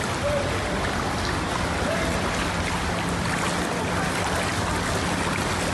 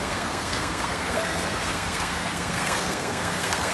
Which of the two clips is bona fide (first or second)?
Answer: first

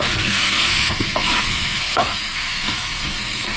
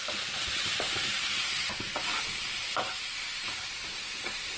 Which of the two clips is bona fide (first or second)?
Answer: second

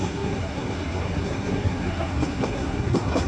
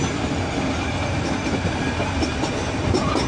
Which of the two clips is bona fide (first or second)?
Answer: second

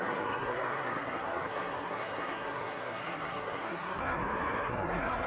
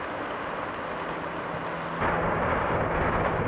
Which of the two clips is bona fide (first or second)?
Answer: second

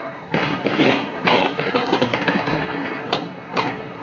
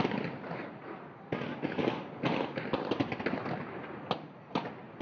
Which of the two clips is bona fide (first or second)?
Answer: second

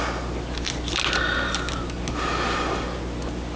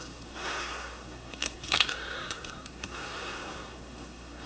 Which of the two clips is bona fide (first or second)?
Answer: first